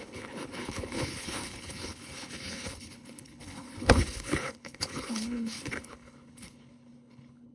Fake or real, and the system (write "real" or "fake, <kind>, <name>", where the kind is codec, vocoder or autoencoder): fake, codec, HILCodec